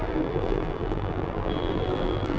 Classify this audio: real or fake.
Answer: fake